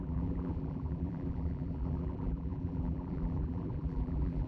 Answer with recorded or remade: remade